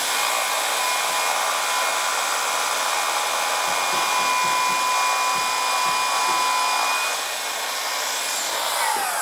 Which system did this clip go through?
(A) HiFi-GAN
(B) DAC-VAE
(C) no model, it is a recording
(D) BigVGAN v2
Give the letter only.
C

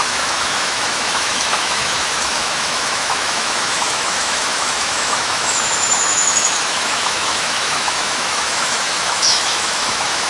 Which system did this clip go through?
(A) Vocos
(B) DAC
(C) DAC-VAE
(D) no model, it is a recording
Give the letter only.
C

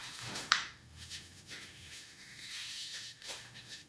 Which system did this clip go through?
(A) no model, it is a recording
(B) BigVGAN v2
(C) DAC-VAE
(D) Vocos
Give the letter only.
C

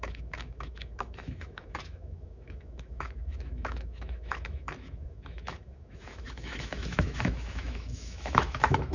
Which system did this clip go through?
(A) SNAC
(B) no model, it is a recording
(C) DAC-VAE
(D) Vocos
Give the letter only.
C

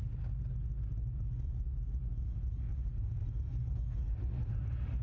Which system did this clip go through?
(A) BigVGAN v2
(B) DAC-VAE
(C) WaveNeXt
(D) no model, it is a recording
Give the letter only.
D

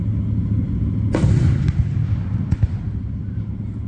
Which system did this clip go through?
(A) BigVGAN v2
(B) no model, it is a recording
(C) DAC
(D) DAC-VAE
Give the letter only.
B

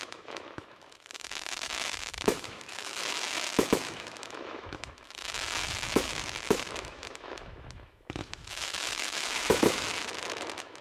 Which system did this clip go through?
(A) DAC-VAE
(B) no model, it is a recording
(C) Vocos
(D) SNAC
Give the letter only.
A